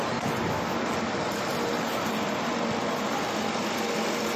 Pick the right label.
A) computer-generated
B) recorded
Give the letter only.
B